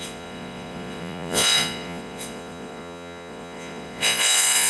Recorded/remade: remade